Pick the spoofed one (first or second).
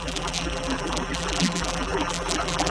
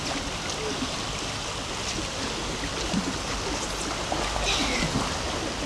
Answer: first